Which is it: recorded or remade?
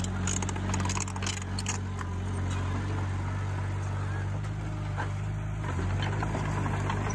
recorded